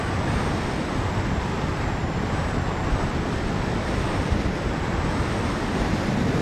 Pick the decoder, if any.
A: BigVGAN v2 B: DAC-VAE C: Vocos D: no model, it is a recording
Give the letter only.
D